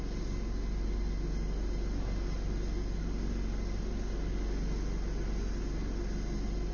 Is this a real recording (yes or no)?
yes